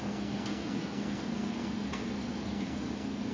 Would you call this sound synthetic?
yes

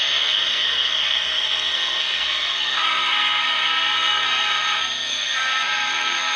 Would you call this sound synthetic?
yes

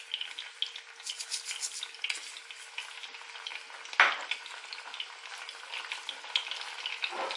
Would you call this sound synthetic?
no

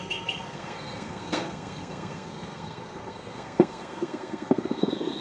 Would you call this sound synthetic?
yes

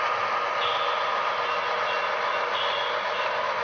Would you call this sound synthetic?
no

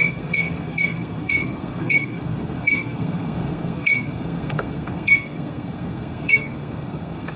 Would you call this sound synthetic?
yes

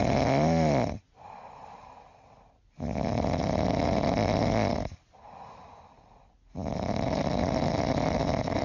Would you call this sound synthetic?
no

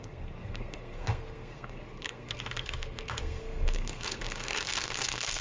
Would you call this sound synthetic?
yes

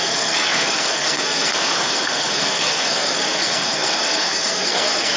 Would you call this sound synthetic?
yes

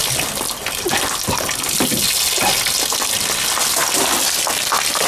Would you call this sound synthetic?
no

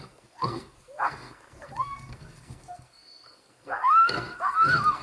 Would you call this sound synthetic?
yes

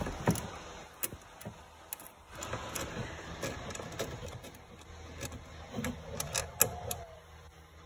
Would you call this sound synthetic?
no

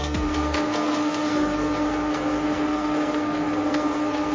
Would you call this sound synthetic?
yes